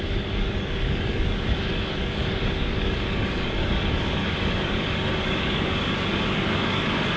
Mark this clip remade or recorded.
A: remade